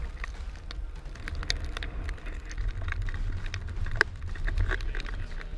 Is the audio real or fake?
real